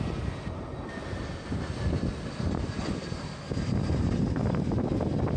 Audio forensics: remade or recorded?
recorded